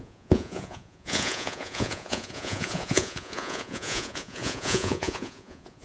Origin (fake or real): fake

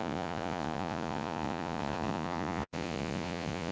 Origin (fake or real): fake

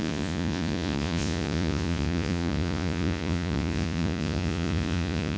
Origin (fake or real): fake